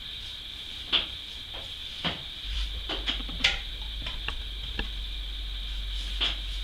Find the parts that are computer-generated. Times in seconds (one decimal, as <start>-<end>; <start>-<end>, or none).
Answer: 1.8-4.4